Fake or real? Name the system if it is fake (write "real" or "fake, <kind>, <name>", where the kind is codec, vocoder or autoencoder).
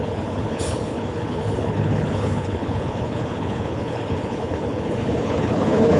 fake, codec, HILCodec